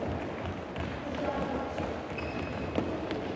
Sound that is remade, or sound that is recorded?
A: recorded